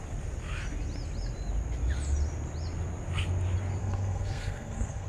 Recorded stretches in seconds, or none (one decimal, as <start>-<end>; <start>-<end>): 0.0-3.8